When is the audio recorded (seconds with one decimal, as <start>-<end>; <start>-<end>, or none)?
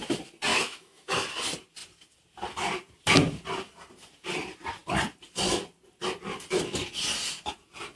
0.0-0.5; 1.2-8.0